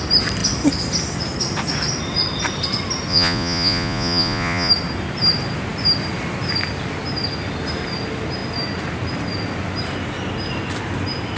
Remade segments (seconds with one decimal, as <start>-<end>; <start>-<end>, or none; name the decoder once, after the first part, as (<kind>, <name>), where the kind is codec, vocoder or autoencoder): 3.1-4.7 (vocoder, Vocos)